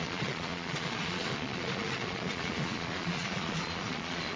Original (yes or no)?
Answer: no